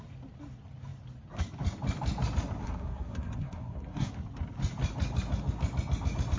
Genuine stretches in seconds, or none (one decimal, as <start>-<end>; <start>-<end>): 0.0-2.6; 4.1-6.4